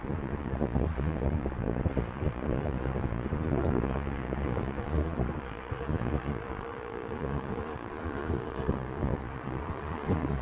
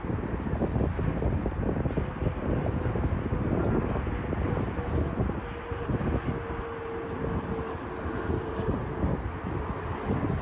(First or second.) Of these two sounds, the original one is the second